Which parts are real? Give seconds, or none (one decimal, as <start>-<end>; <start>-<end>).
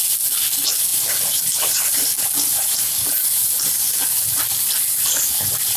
0.0-5.8